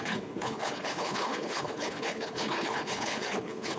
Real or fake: fake